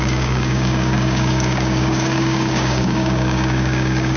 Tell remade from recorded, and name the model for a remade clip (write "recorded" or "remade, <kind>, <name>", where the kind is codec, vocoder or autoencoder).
remade, codec, DAC